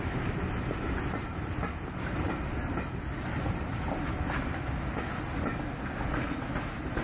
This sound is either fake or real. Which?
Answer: real